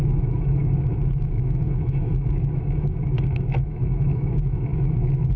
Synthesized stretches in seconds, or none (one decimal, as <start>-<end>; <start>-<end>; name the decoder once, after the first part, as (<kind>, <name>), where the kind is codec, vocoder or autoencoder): 0.0-5.4 (autoencoder, DAC-VAE)